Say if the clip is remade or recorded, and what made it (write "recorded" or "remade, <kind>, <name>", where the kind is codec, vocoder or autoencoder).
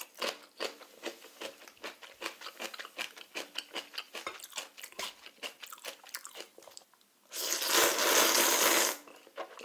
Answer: recorded